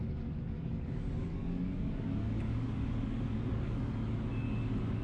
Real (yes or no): no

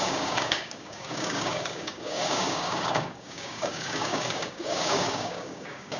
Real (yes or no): no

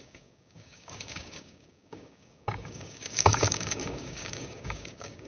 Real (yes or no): no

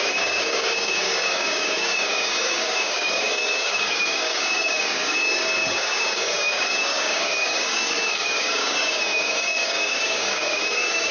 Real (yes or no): no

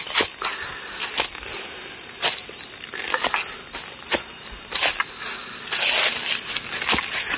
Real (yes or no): yes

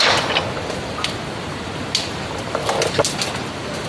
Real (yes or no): yes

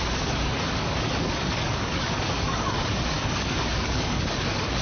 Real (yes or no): no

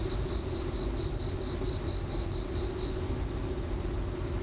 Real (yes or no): yes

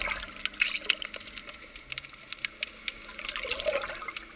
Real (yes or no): yes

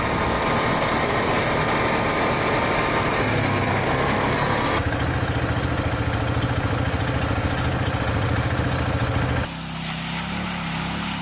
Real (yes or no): yes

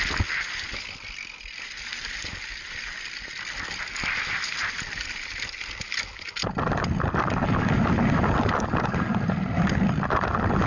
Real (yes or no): yes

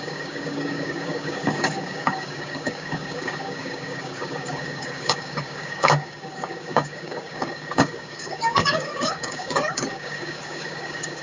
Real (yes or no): no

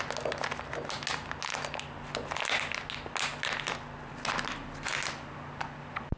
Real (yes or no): yes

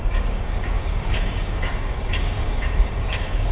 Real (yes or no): no